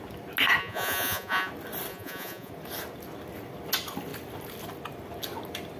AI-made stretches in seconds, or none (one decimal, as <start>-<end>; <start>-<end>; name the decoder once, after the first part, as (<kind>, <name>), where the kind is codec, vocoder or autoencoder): 0.6-1.5 (vocoder, Vocos); 1.9-2.5